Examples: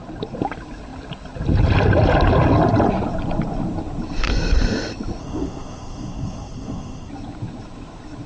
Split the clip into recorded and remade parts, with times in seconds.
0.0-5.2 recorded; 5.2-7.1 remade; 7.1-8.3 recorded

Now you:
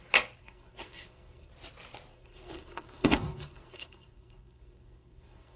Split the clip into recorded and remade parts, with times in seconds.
0.0-0.4 recorded; 0.4-1.5 remade; 1.5-2.1 recorded; 2.1-5.6 remade